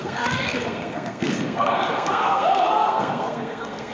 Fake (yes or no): yes